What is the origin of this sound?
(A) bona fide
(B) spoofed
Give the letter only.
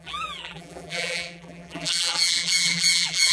B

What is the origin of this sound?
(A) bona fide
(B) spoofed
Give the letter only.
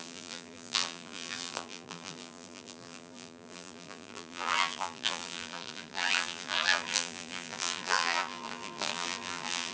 B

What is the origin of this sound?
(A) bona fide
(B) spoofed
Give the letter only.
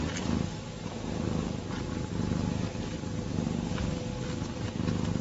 A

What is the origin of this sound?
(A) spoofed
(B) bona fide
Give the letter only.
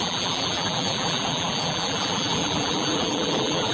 A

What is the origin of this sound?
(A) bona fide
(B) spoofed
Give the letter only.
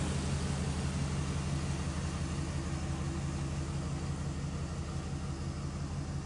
A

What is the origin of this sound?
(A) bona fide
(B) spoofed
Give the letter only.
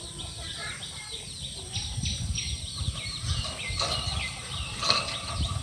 B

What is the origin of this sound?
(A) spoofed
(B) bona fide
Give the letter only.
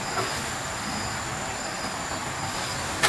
B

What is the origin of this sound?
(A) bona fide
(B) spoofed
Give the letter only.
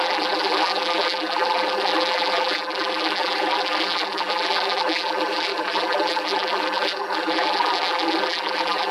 B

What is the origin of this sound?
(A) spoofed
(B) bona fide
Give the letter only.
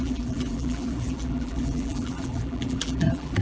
A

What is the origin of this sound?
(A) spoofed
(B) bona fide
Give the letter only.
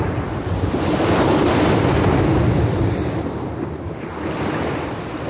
B